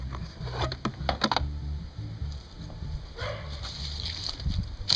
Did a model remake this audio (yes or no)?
no